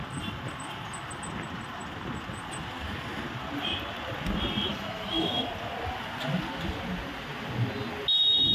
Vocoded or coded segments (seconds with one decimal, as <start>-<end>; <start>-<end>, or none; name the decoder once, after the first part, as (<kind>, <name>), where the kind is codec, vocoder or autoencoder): 4.7-5.5 (autoencoder, DAC-VAE)